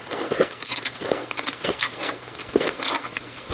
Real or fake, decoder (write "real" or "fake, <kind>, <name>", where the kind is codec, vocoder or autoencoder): fake, codec, SNAC